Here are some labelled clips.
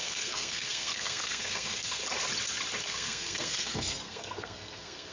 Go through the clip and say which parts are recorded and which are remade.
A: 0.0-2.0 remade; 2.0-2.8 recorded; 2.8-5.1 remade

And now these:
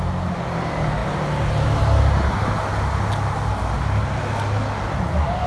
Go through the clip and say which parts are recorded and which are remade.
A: 0.0-5.5 recorded